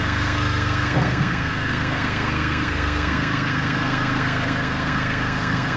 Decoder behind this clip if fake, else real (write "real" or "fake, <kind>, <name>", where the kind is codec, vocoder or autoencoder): fake, codec, SNAC